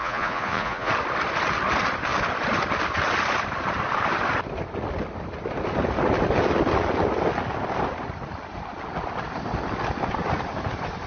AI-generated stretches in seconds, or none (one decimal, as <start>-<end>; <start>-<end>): 0.0-0.9

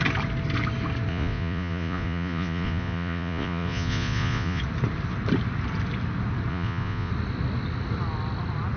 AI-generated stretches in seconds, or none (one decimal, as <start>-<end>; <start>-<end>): 1.1-4.6; 6.5-7.1

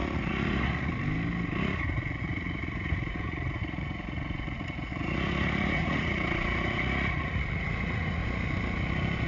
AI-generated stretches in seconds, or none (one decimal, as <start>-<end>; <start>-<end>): 0.0-0.9; 1.6-8.2

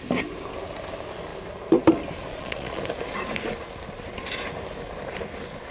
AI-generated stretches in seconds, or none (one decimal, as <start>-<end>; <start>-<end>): 2.3-2.8

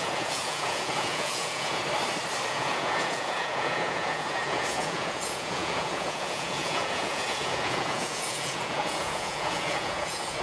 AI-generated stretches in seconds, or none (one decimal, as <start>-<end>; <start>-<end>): 0.0-1.8; 2.5-10.4

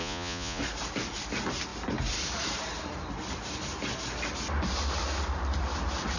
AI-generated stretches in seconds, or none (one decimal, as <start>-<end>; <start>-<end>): 0.0-0.6